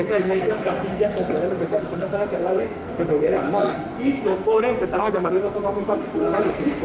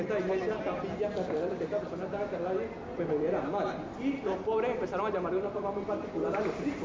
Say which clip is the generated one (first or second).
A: first